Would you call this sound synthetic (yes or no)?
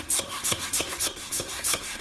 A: yes